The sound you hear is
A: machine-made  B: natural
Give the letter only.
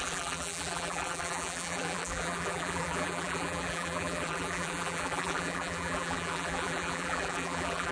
A